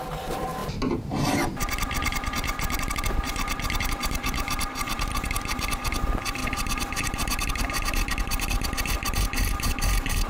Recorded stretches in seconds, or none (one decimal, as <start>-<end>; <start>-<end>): none